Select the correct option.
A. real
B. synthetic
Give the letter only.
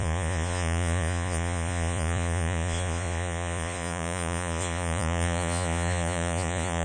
B